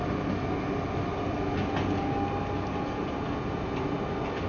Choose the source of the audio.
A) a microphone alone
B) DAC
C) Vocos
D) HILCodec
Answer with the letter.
A